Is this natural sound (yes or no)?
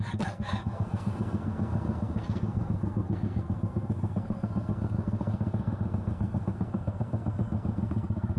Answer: no